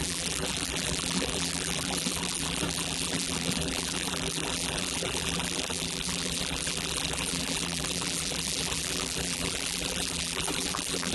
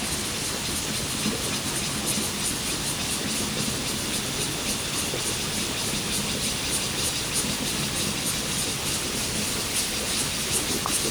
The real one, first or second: second